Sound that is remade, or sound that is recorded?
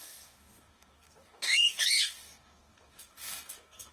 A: remade